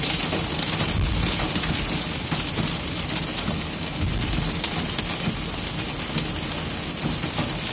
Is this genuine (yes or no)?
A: yes